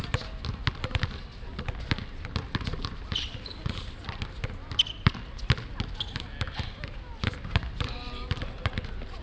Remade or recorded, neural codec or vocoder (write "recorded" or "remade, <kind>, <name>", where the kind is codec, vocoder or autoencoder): recorded